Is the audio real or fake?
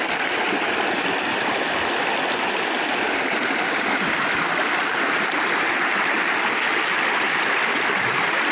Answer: fake